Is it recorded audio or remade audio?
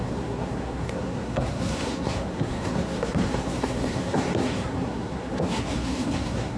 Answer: remade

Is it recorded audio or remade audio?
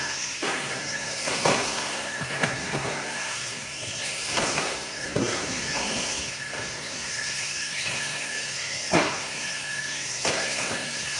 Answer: remade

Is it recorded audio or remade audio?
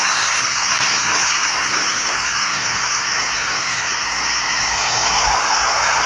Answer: remade